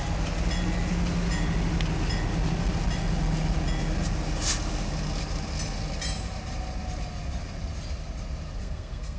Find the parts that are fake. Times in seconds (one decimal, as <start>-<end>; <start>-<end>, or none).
8.6-9.2